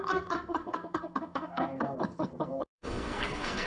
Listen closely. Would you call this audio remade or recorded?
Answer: remade